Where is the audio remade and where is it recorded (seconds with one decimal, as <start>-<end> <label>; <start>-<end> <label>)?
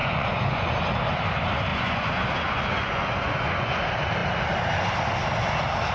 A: 0.0-0.7 remade; 0.7-1.7 recorded; 1.7-3.8 remade; 3.8-5.9 recorded